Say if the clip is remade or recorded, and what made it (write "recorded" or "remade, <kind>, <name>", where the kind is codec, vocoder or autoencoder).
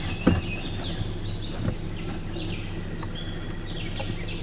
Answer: recorded